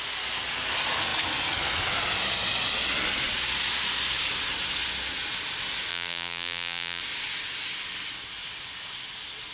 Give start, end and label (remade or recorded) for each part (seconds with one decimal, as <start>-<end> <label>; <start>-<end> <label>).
0.0-5.9 recorded; 5.9-7.0 remade; 7.0-9.5 recorded